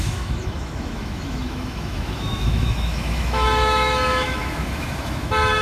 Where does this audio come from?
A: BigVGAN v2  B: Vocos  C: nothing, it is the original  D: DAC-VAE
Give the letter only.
D